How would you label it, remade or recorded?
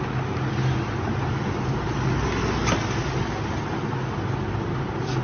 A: recorded